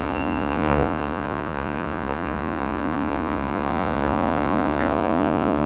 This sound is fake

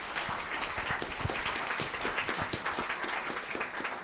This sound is real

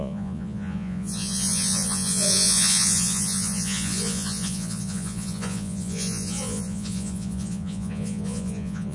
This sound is fake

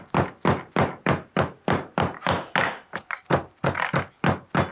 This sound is real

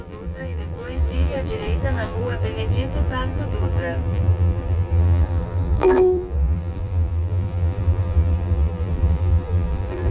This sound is fake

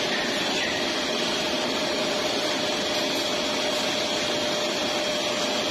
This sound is real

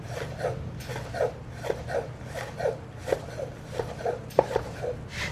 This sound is fake